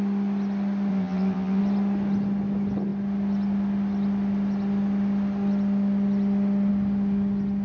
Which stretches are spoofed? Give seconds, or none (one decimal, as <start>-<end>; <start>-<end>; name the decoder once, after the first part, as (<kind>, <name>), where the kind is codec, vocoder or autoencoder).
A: 0.9-1.6 (vocoder, HiFi-GAN)